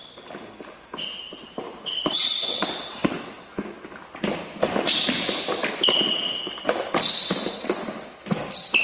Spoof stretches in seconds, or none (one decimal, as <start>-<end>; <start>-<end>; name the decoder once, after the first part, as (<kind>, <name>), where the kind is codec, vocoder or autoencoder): 2.2-3.4 (vocoder, WaveNeXt)